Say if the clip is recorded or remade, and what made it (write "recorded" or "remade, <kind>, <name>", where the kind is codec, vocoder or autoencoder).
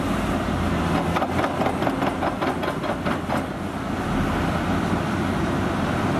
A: recorded